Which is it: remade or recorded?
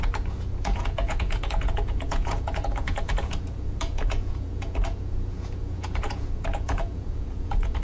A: remade